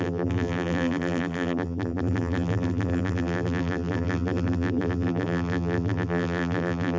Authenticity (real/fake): fake